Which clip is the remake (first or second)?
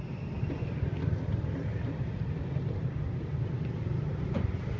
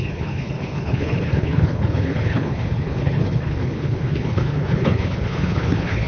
second